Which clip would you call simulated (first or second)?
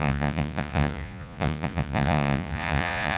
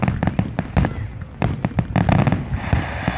first